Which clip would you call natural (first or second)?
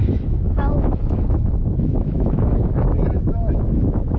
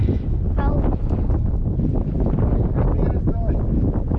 second